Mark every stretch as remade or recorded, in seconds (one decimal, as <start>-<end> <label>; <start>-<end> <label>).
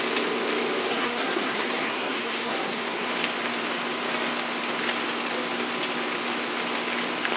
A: 0.0-0.9 recorded; 0.9-3.1 remade; 3.1-7.4 recorded